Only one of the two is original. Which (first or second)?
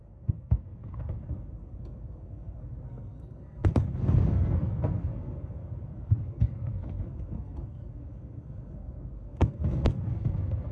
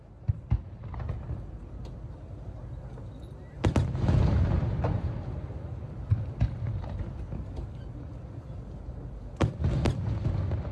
second